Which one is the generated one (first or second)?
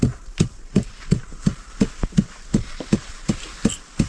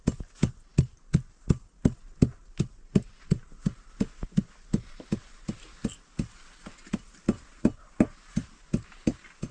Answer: first